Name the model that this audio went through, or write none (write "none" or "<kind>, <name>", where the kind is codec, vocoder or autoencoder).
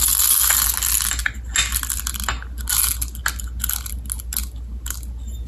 none